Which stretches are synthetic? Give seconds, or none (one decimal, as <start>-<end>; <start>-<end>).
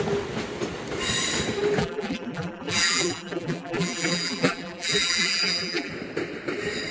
1.8-5.9